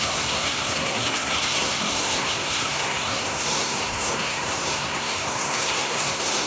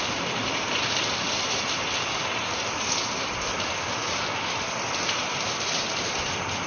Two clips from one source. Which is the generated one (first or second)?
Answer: first